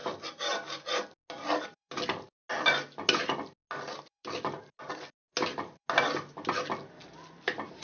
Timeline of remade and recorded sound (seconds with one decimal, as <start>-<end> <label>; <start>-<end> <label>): 0.0-7.8 recorded

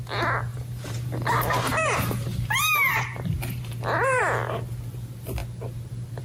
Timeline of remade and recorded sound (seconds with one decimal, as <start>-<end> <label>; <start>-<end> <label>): 0.0-0.5 recorded; 0.5-4.2 remade; 4.2-6.2 recorded

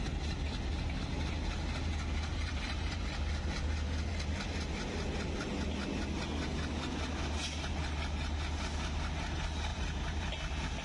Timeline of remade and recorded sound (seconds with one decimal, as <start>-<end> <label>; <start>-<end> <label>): 0.0-2.3 recorded; 2.3-3.0 remade; 3.0-9.7 recorded; 9.7-10.3 remade; 10.3-10.8 recorded